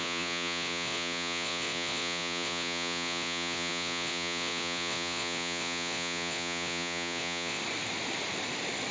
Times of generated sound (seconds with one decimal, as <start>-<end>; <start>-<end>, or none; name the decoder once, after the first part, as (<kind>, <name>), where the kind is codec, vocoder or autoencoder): 0.0-7.6 (vocoder, Vocos)